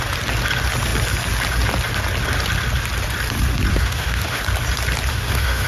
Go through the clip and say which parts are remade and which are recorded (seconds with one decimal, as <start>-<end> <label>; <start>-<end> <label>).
0.0-3.7 recorded; 3.7-4.4 remade; 4.4-5.1 recorded; 5.1-5.7 remade